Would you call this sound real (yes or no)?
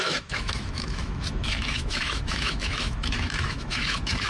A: no